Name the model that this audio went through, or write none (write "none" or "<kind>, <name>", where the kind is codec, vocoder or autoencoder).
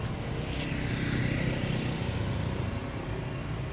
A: none